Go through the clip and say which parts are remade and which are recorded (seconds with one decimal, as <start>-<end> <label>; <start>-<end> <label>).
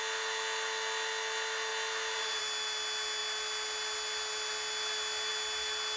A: 0.0-6.0 recorded